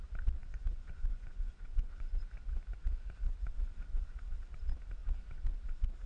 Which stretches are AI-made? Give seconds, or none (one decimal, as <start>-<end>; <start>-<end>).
0.4-2.2